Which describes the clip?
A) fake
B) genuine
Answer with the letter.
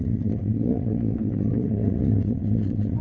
A